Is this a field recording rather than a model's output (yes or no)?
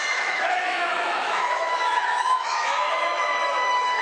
no